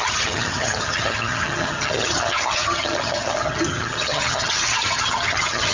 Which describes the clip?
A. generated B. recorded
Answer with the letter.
A